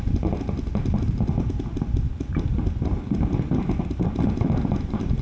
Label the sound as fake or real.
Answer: real